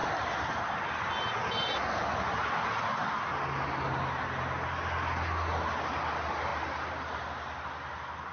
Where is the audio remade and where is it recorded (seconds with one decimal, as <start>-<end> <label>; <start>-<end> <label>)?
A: 0.0-6.5 recorded; 6.5-7.0 remade; 7.0-8.3 recorded